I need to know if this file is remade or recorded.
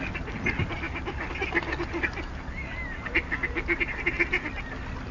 recorded